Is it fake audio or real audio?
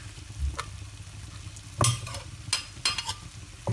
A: real